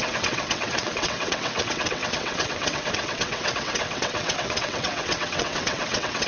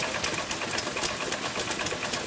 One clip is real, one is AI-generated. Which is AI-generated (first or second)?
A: first